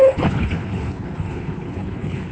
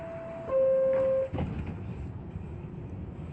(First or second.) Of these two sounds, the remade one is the first